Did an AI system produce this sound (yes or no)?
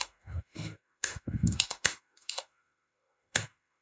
yes